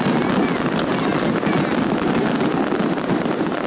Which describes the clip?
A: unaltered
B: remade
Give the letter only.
A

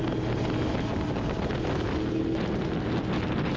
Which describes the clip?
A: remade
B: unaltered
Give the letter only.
B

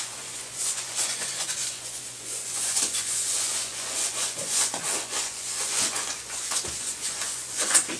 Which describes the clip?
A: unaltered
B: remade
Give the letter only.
B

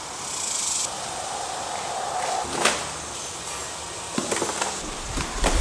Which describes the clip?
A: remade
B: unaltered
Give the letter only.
B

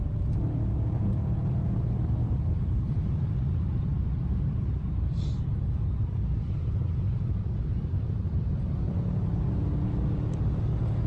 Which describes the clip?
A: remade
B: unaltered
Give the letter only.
A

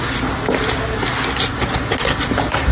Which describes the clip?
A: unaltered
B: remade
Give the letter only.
A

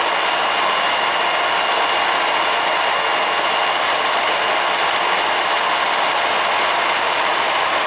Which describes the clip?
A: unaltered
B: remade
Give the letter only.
A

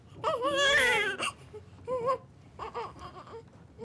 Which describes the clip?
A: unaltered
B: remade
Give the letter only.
A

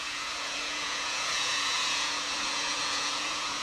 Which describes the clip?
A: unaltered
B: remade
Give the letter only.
B